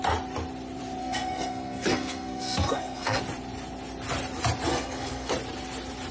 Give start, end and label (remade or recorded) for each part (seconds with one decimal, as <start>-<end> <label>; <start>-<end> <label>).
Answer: 0.0-1.0 recorded; 1.0-3.2 remade; 3.2-4.7 recorded; 4.7-5.3 remade; 5.3-6.1 recorded